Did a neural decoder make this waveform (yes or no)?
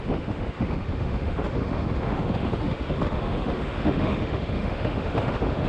yes